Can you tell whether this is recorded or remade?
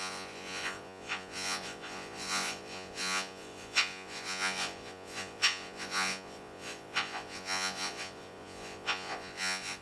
remade